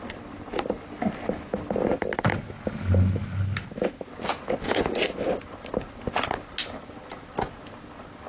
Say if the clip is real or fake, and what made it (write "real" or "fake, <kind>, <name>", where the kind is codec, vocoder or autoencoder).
real